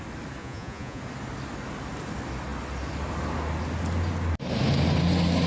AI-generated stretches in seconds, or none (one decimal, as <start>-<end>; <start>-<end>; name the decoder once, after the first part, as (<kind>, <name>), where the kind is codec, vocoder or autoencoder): 0.4-1.0 (vocoder, Vocos)